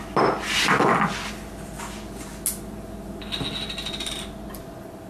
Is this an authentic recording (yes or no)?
yes